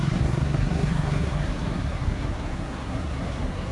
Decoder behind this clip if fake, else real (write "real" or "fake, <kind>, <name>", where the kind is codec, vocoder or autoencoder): fake, codec, SNAC